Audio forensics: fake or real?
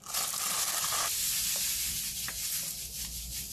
fake